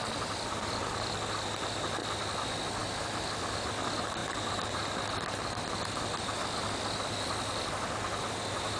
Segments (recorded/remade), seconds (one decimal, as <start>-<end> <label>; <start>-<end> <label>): 0.0-8.8 recorded